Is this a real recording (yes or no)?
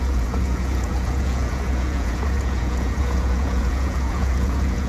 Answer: no